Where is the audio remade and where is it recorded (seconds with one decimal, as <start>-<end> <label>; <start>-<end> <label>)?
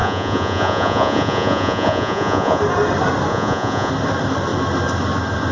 0.0-2.6 remade; 2.6-3.3 recorded; 3.3-3.9 remade; 3.9-5.5 recorded